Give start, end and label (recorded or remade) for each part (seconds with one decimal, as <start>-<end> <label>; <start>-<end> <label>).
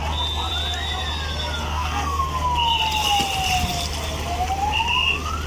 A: 0.0-1.6 recorded; 1.6-2.2 remade; 2.2-5.5 recorded